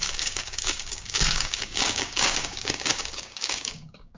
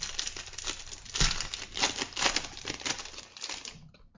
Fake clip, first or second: first